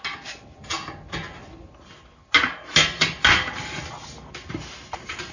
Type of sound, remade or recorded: recorded